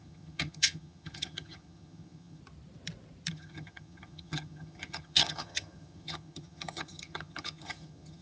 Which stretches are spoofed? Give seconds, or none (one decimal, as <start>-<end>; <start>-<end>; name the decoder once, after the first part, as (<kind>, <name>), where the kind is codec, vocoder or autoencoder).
0.0-2.4 (vocoder, HiFi-GAN); 3.3-8.2